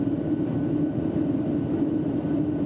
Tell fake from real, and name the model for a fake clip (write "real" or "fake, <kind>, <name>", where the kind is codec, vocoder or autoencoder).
real